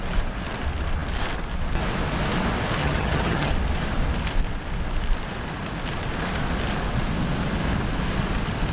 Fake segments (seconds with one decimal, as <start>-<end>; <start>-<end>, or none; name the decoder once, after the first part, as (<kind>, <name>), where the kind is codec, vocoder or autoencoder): 2.8-3.5 (vocoder, HiFi-GAN)